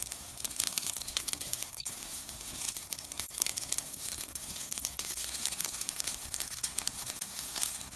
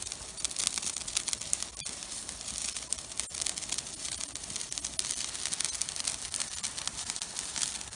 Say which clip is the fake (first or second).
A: first